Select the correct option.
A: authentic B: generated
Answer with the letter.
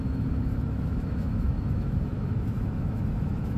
B